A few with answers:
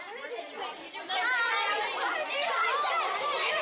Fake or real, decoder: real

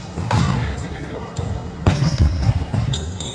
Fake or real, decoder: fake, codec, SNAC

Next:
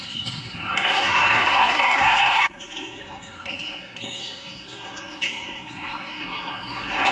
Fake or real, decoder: fake, codec, SNAC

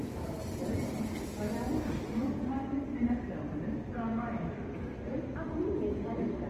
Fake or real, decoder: real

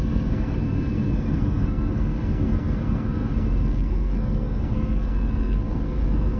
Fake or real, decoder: fake, codec, SNAC